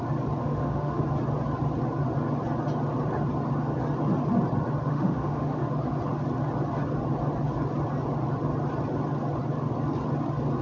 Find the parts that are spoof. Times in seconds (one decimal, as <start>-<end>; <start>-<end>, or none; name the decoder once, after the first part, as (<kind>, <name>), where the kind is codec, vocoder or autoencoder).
0.4-1.0 (autoencoder, DAC-VAE); 4.9-5.7